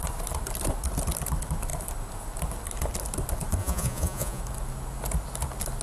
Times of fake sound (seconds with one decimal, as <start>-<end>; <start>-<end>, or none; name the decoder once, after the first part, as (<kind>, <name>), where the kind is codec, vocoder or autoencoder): 3.6-4.4 (vocoder, Vocos)